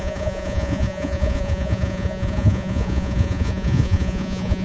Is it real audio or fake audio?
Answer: fake